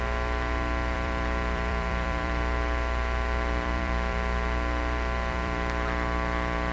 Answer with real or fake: fake